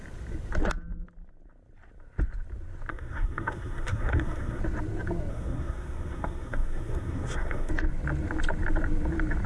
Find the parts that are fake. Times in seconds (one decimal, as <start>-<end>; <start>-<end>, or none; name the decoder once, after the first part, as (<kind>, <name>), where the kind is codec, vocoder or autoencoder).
2.9-4.6 (codec, SNAC); 5.3-7.7